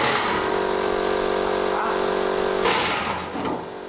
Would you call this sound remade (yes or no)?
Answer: no